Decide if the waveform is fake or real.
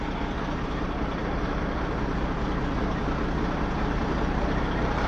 fake